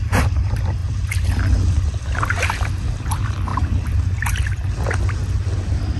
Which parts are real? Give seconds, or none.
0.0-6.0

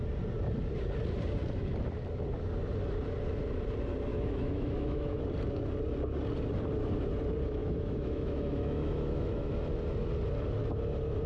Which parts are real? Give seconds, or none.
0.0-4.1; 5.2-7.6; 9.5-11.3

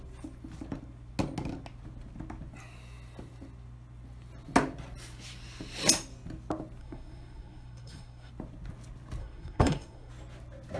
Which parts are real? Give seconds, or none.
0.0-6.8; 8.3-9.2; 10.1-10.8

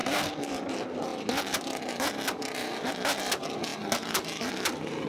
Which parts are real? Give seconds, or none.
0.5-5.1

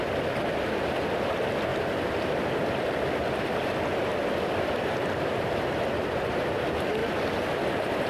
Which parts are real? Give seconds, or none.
0.0-1.7; 3.0-4.1; 6.2-8.1

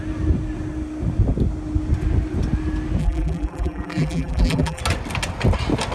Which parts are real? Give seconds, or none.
0.0-3.0; 4.8-5.9

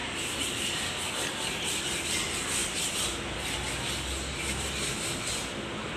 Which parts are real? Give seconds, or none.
0.5-6.0

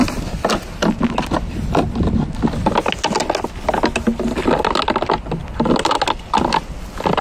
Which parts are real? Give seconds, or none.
0.0-7.2